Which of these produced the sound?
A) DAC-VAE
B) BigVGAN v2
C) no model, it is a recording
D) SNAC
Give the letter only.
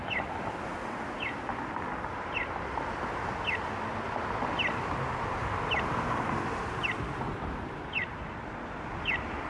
C